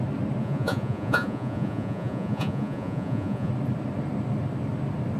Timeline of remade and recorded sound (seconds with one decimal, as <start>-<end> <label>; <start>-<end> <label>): 0.0-0.4 recorded; 0.4-3.5 remade; 3.5-5.2 recorded